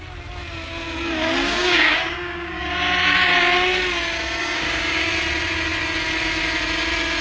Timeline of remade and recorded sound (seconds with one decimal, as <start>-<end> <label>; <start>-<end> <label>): 0.0-1.4 recorded; 1.4-2.7 remade; 2.7-4.4 recorded; 4.4-5.1 remade; 5.1-7.2 recorded